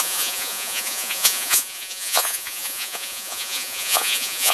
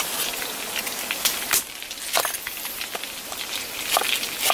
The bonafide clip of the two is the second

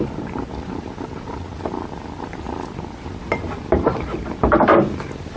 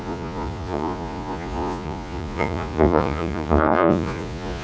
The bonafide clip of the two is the first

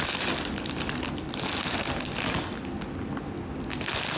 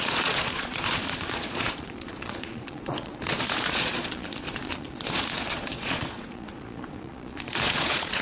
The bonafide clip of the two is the first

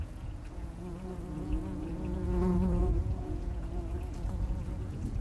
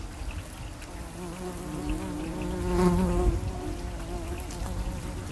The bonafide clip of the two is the second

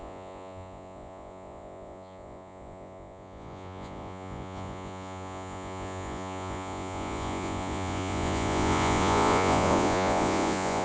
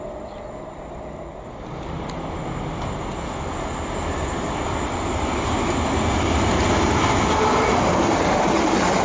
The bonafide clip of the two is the second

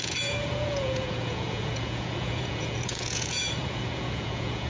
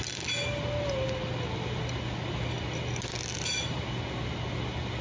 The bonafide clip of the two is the second